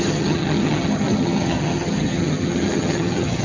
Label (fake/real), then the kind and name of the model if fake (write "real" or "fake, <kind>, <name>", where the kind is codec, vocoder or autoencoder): fake, vocoder, HiFi-GAN